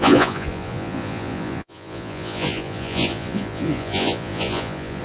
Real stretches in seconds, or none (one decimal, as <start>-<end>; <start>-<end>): none